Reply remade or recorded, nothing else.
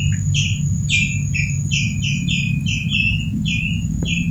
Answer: recorded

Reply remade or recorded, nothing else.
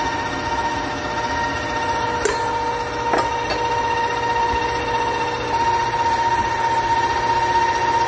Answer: recorded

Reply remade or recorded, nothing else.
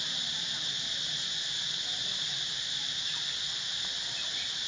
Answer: recorded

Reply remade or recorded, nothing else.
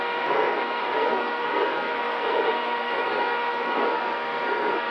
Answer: remade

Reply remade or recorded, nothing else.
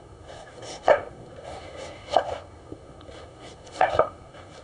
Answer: remade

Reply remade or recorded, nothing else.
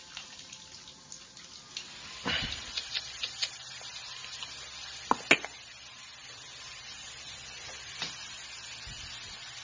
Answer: recorded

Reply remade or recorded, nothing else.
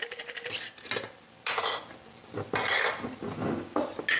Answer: recorded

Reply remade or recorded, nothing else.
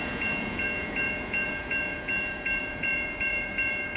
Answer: remade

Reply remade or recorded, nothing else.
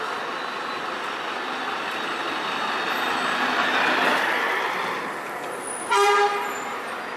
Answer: recorded